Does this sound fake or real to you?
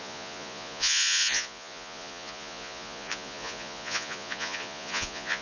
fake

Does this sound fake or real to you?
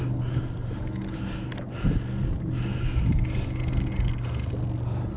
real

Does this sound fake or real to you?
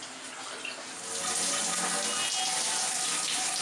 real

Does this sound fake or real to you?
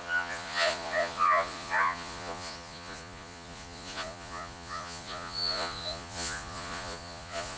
fake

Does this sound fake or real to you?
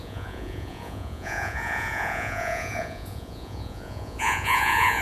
fake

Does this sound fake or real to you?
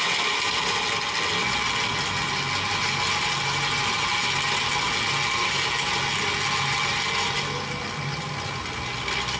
real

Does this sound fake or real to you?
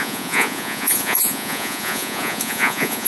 fake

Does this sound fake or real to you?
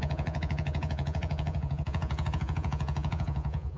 fake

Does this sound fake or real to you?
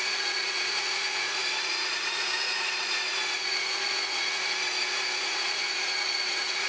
fake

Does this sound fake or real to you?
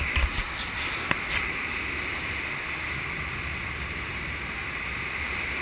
real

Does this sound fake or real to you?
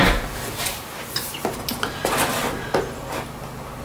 real